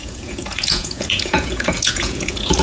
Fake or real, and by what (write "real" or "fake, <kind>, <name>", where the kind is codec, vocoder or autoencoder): fake, vocoder, Vocos